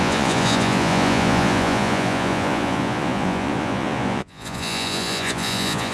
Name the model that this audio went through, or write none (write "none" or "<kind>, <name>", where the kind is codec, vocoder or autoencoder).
vocoder, Vocos